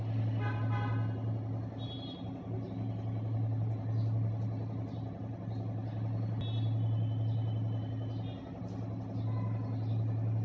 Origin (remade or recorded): recorded